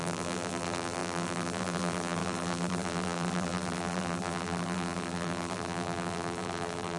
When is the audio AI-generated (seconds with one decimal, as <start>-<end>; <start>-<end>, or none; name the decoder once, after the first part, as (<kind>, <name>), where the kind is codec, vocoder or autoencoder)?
0.0-7.0 (vocoder, BigVGAN v2)